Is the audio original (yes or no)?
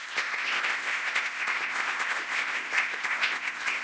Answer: no